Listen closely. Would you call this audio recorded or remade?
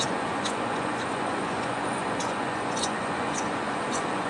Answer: remade